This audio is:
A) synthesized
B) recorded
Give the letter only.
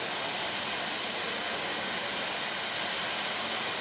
B